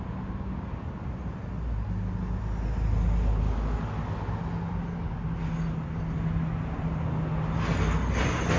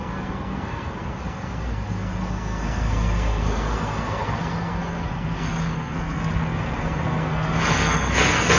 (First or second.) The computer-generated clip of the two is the second